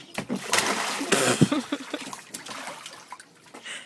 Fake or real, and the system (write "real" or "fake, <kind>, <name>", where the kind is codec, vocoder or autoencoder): real